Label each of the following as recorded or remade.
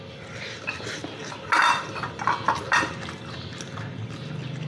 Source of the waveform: recorded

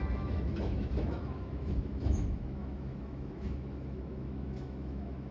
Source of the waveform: remade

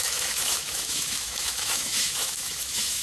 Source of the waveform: remade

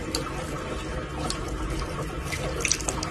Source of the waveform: recorded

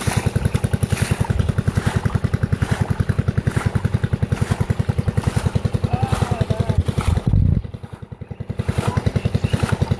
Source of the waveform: recorded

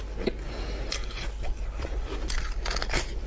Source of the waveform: recorded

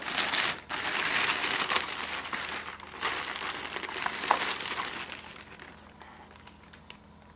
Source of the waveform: recorded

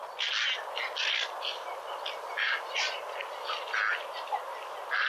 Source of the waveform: recorded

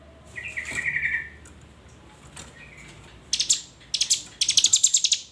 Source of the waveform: recorded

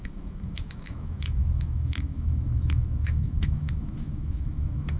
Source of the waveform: remade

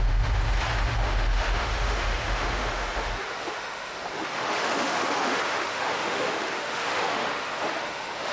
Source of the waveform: remade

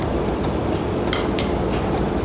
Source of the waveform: recorded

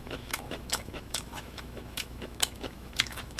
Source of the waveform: remade